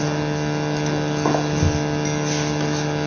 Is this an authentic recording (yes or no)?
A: yes